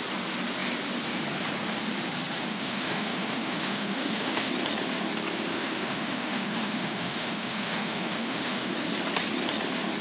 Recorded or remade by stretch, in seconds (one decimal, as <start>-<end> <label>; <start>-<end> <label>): 0.0-2.5 recorded; 2.5-4.5 remade; 4.5-5.5 recorded; 5.5-8.7 remade; 8.7-10.0 recorded